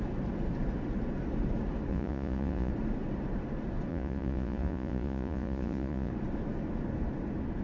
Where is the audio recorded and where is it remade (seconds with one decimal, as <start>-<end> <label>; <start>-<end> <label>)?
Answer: 0.0-1.9 recorded; 1.9-2.7 remade; 2.7-3.9 recorded; 3.9-6.1 remade; 6.1-7.6 recorded